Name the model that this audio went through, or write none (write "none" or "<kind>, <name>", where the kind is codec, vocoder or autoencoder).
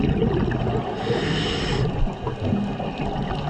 none